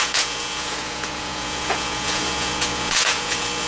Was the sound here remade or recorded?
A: remade